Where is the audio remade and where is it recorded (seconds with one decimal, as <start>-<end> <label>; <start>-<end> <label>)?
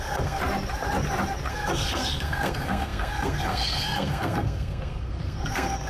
0.0-0.4 remade; 0.4-1.5 recorded; 1.5-5.9 remade